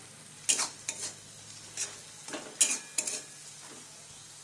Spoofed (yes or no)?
no